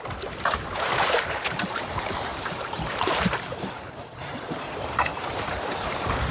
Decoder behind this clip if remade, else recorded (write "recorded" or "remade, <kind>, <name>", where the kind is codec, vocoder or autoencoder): remade, vocoder, BigVGAN v2